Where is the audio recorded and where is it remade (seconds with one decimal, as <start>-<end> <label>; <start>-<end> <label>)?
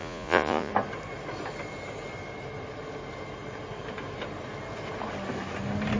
0.0-0.7 remade; 0.7-6.0 recorded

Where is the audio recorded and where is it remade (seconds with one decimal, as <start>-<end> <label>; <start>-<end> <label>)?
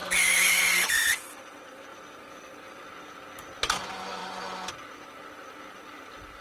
0.0-0.6 remade; 0.6-6.4 recorded